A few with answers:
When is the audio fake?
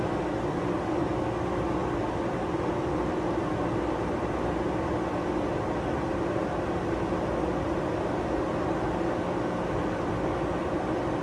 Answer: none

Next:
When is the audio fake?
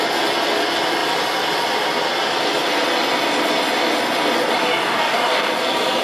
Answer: 4.6-5.6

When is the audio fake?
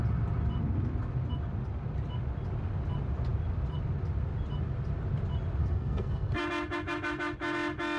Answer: 5.6-6.4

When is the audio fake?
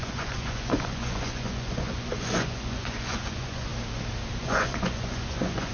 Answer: 0.0-3.7; 4.4-5.7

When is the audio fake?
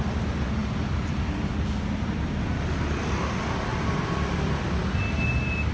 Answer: 0.6-1.8; 3.7-4.5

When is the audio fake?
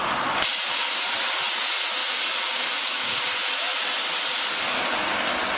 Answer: 2.0-3.2